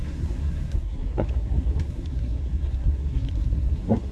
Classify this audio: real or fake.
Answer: fake